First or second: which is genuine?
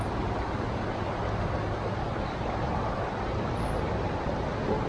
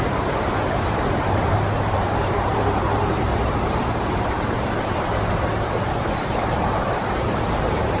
first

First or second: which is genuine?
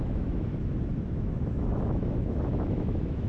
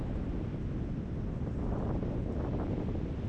second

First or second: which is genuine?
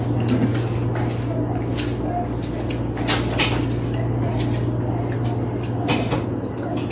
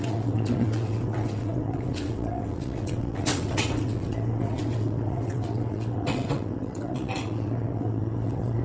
first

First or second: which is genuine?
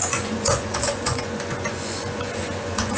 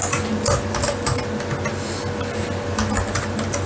second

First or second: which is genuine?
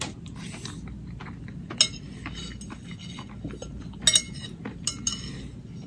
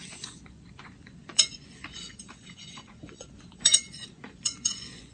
first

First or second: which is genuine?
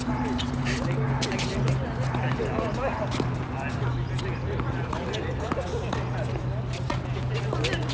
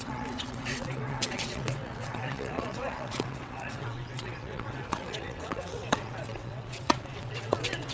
first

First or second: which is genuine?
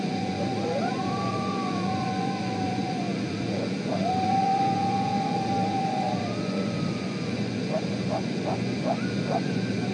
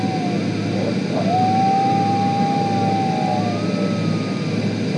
second